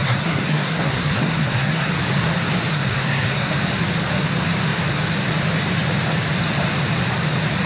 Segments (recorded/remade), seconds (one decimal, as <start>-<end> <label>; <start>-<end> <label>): 0.0-1.9 remade; 1.9-2.7 recorded; 2.7-3.5 remade; 3.5-7.7 recorded